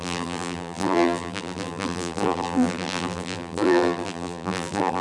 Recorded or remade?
remade